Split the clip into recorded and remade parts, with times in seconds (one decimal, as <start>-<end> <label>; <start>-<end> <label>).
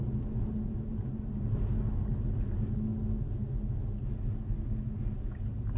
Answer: 0.0-5.8 recorded